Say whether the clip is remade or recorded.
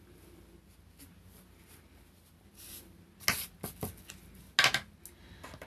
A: recorded